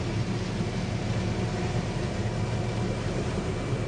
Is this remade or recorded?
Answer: recorded